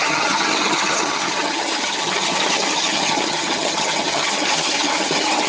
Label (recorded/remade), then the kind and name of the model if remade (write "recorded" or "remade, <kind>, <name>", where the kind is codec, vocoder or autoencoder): remade, vocoder, HiFi-GAN